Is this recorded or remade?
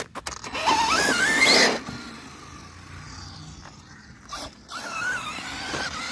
recorded